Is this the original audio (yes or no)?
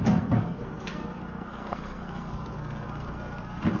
no